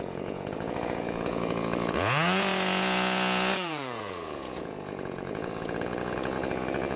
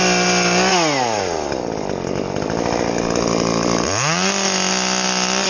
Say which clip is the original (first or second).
second